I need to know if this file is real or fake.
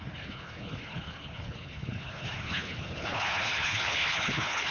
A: fake